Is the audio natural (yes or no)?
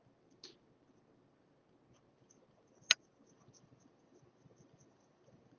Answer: yes